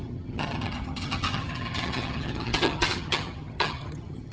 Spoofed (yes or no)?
yes